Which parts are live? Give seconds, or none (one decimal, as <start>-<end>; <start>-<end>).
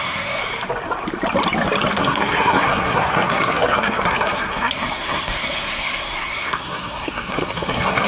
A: 0.4-1.9